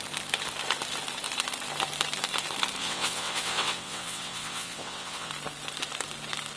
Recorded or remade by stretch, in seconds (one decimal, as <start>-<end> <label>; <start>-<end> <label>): 0.0-2.8 recorded; 2.8-5.3 remade; 5.3-6.6 recorded